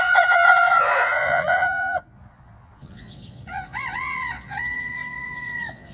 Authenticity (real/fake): fake